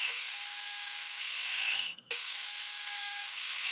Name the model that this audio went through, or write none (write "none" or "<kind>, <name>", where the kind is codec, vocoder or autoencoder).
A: codec, SNAC